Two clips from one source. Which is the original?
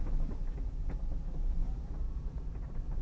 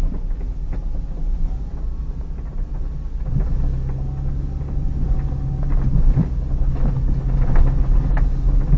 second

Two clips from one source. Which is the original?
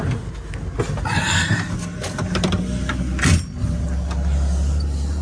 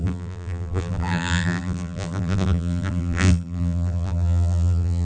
first